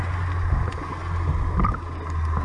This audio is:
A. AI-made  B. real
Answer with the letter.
B